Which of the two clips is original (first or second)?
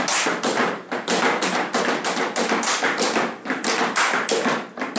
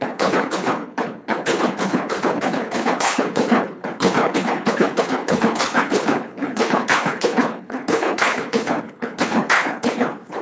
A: first